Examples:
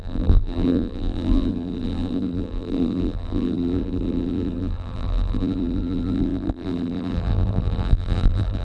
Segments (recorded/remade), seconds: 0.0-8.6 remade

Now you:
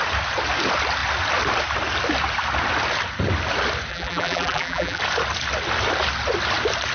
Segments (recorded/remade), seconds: 0.0-3.9 recorded; 3.9-5.0 remade; 5.0-6.9 recorded

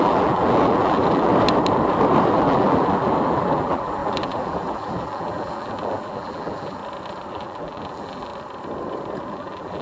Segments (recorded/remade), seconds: 0.0-1.3 remade; 1.3-2.3 recorded; 2.3-6.8 remade; 6.8-7.3 recorded; 7.3-8.3 remade; 8.3-9.3 recorded; 9.3-9.8 remade

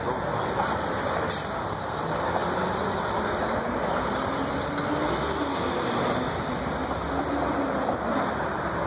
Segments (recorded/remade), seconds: 0.0-8.9 recorded